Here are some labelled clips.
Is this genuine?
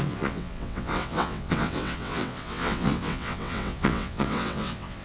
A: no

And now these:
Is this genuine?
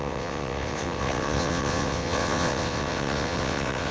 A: no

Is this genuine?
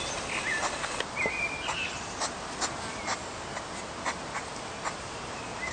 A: yes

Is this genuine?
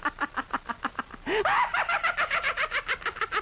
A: yes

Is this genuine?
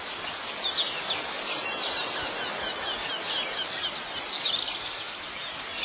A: yes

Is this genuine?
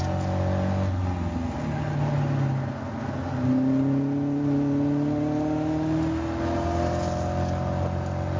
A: yes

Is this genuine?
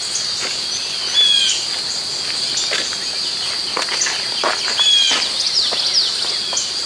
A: yes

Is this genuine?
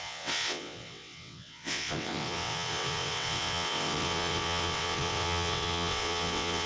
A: no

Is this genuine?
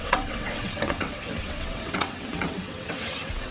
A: no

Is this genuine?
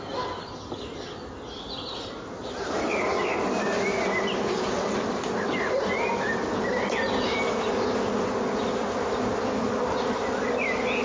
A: yes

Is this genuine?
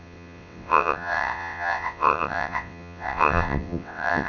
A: no